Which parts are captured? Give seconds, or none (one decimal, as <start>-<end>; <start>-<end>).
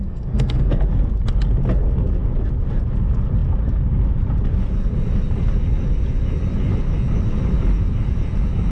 0.7-8.7